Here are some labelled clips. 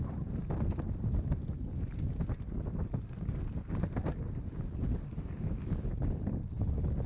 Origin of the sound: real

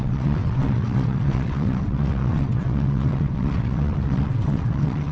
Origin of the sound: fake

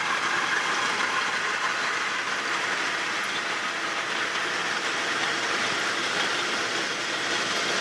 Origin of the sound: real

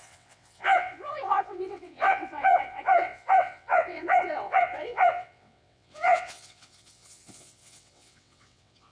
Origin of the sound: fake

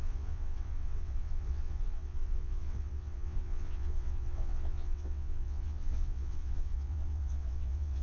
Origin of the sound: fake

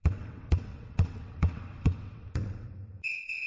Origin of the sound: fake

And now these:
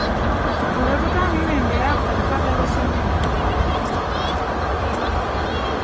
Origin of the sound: real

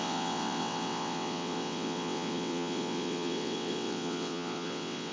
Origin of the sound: fake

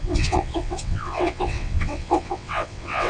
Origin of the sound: fake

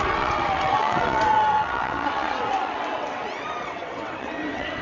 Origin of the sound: fake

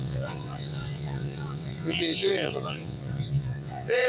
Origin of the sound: fake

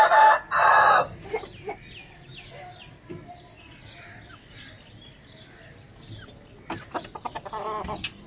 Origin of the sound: real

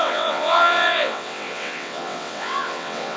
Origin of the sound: fake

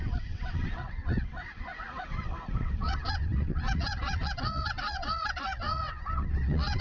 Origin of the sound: fake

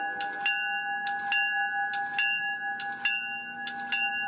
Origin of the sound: real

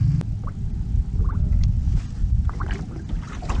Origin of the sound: real